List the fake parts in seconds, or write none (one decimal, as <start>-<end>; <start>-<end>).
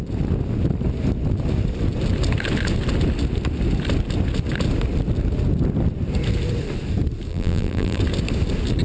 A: 7.3-8.0